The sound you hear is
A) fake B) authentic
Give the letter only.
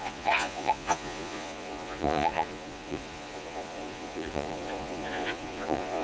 A